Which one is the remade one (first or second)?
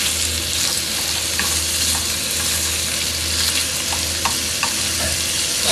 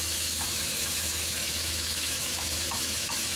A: second